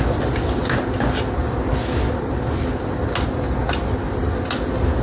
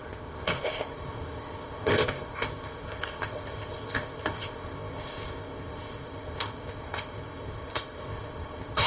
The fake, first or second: second